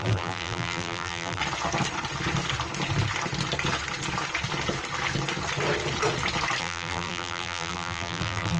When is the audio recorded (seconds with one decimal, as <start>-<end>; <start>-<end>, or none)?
1.4-6.6